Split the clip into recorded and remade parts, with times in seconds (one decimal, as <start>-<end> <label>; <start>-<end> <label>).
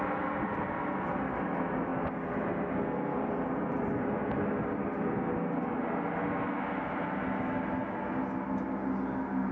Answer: 0.0-9.5 recorded